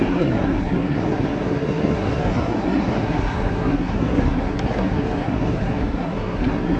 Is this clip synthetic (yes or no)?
yes